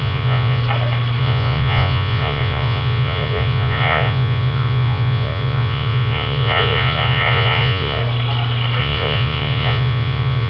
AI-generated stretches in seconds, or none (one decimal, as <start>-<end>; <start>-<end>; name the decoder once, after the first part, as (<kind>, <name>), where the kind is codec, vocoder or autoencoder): 0.0-0.6 (vocoder, Vocos); 1.2-8.0; 8.8-10.5